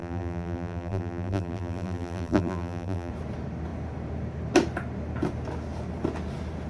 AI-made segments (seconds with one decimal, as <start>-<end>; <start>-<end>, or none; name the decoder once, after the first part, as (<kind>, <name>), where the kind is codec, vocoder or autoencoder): 0.0-3.1 (vocoder, BigVGAN v2)